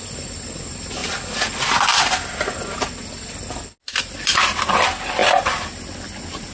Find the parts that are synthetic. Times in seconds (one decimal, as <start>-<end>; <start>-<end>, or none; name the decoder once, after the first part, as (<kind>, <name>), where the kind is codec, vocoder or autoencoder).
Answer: none

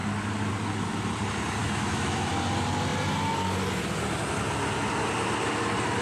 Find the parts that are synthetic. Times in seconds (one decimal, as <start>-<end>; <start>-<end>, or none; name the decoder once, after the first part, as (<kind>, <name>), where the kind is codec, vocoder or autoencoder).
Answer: 1.6-2.3 (autoencoder, DAC-VAE)